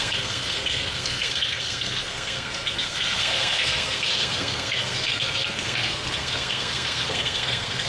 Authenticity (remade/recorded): remade